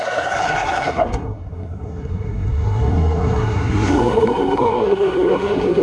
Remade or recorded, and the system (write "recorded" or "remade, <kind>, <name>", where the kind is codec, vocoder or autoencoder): remade, codec, SNAC